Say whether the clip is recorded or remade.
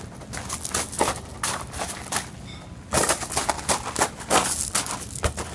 recorded